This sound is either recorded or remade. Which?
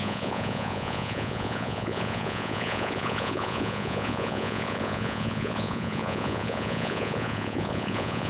remade